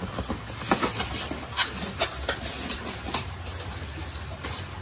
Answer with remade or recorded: recorded